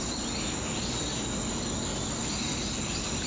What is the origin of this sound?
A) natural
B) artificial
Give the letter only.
A